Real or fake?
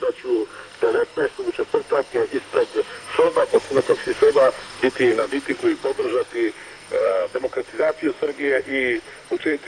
fake